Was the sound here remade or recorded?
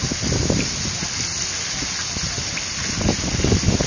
recorded